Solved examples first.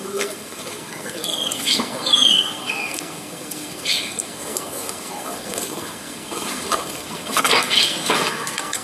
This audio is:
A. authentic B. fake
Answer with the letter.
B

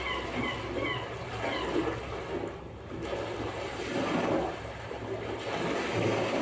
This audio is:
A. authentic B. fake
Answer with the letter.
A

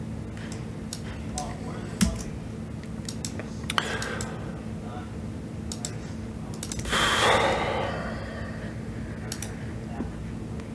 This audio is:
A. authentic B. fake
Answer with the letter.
A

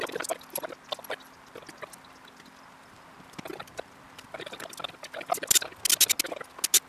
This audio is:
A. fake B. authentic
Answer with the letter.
B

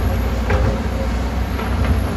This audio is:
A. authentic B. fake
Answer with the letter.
A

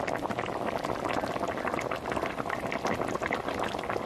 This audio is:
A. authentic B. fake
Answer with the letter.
A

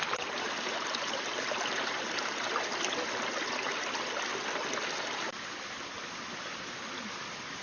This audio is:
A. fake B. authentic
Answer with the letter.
B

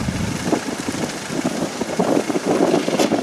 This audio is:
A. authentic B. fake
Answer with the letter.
A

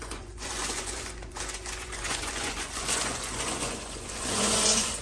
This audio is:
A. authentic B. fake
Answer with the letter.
B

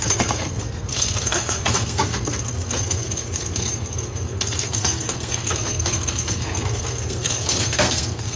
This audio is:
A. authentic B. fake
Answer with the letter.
B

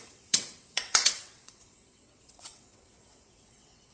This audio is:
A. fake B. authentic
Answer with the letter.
A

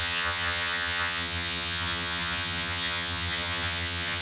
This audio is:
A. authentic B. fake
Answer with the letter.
B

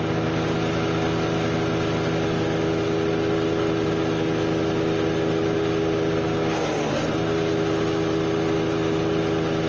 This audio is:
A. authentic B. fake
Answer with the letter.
A